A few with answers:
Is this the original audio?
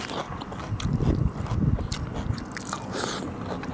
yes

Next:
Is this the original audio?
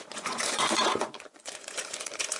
no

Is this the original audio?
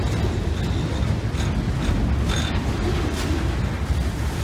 yes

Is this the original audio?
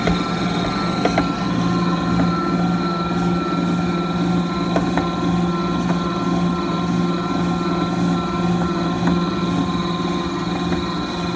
yes